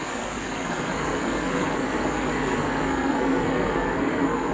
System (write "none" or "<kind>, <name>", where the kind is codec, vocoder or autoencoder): codec, SNAC